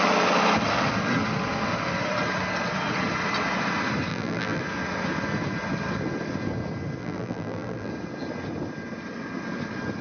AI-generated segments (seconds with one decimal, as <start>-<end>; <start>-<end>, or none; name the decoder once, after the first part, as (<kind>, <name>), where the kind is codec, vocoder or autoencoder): 4.1-4.6 (vocoder, BigVGAN v2); 7.0-7.9